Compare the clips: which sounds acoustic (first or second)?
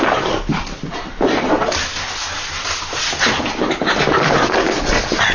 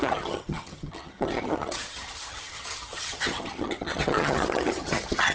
first